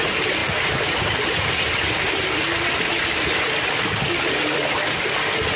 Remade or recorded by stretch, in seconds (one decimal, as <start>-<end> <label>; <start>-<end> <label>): 0.0-5.6 recorded